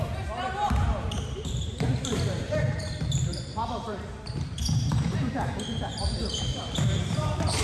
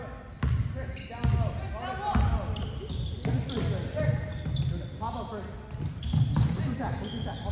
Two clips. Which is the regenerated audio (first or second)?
first